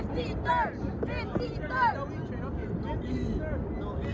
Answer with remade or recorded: recorded